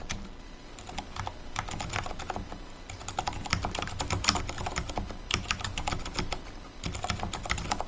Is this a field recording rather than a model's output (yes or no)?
yes